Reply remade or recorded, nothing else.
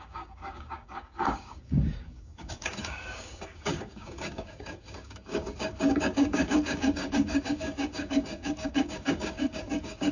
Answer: remade